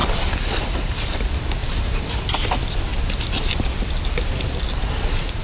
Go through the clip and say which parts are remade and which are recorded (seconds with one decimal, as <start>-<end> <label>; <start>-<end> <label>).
0.0-1.2 remade; 1.2-1.6 recorded; 1.6-2.2 remade; 2.2-5.4 recorded